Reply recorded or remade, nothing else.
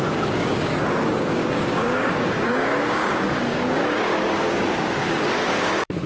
remade